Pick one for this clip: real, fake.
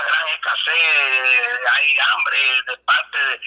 real